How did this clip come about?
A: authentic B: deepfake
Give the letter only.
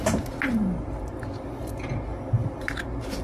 A